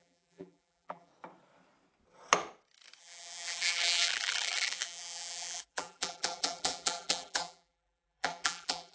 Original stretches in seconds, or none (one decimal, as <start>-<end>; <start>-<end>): 1.1-3.0